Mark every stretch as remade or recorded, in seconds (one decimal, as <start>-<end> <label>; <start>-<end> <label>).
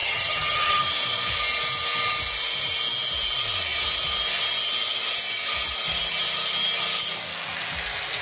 0.0-0.8 remade; 0.8-8.2 recorded